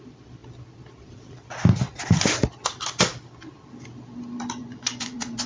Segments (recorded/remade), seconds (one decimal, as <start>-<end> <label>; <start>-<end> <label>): 0.0-4.6 recorded; 4.6-5.5 remade